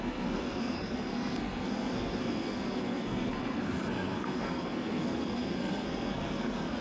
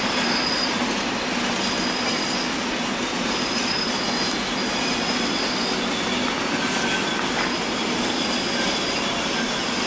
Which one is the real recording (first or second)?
second